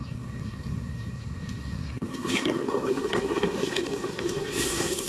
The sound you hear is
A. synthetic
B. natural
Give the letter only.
A